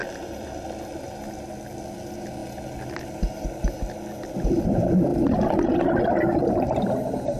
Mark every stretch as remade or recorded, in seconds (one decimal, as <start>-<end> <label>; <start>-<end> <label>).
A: 0.0-7.4 recorded